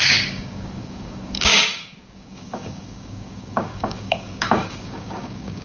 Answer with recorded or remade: remade